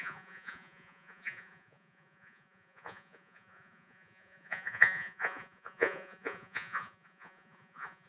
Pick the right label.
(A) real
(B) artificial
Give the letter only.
B